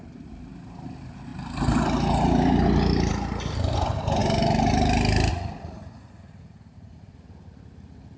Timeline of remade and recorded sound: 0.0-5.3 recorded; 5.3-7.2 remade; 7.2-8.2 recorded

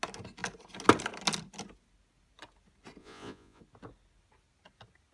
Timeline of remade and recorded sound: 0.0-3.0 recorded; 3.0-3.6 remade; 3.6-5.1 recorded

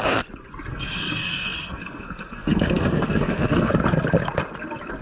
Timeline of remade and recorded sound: 0.0-0.7 recorded; 0.7-3.7 remade; 3.7-5.0 recorded